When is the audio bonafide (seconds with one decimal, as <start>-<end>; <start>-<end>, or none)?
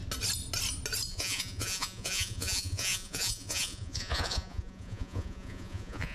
0.0-1.1